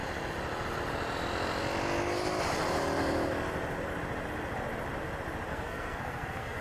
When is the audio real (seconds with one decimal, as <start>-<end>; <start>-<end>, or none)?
0.0-5.5